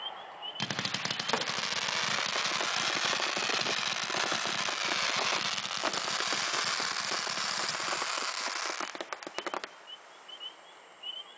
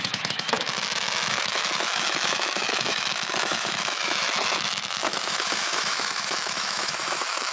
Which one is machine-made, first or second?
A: second